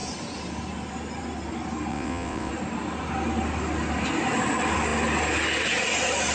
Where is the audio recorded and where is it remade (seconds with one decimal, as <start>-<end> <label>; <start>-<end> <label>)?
0.0-1.9 recorded; 1.9-2.5 remade; 2.5-6.3 recorded